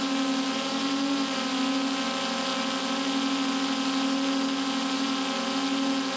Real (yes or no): yes